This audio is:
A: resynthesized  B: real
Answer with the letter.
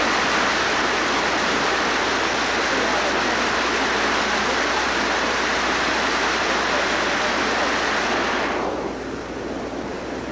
B